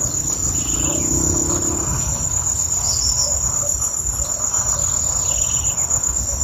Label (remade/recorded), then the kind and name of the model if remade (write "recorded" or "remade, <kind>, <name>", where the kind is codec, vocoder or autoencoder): recorded